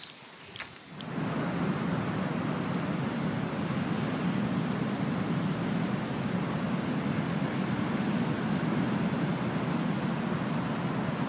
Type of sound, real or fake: real